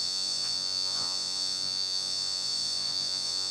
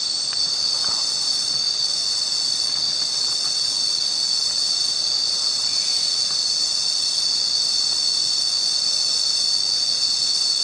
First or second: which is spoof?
first